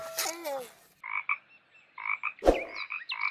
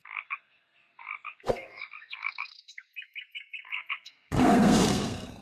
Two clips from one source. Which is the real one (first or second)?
first